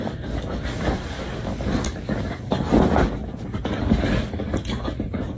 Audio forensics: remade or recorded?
remade